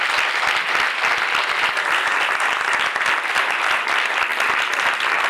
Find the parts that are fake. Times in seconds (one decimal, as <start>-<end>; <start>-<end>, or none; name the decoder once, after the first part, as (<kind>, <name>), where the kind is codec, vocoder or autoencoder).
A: none